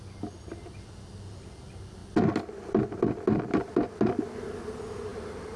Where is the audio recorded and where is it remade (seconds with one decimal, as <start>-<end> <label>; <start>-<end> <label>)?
0.0-5.6 recorded